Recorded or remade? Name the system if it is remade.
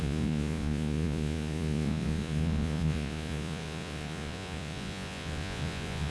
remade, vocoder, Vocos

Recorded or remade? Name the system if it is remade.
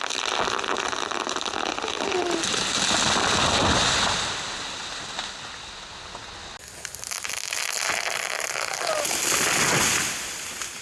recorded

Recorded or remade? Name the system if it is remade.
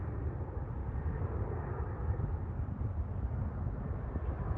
recorded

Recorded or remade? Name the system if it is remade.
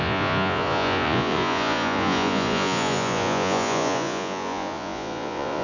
remade, vocoder, Vocos